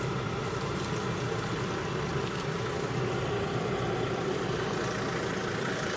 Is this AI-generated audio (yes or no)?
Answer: no